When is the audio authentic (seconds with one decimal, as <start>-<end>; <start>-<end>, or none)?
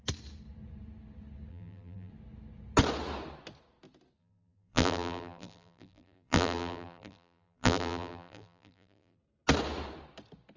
0.0-1.5; 2.1-4.2; 9.2-10.6